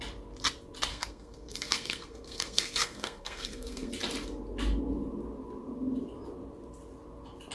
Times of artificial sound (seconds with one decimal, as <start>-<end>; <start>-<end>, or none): 0.9-3.9